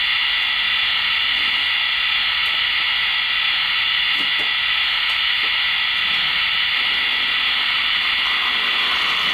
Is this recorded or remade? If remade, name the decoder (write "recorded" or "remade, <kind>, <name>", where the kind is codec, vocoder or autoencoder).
recorded